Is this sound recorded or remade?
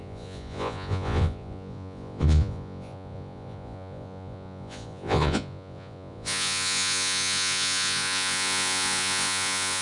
remade